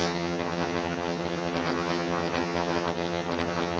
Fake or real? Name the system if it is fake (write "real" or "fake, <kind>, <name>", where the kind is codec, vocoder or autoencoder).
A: fake, vocoder, HiFi-GAN